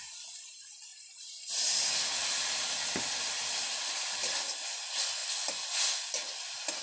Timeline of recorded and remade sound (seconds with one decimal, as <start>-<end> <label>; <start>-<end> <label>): 0.0-6.8 recorded